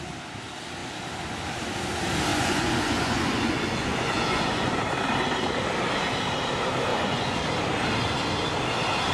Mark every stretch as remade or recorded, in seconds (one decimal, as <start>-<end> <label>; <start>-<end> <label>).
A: 0.0-2.3 recorded; 2.3-4.8 remade; 4.8-6.9 recorded; 6.9-7.4 remade; 7.4-9.1 recorded